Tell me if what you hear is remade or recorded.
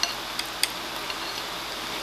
recorded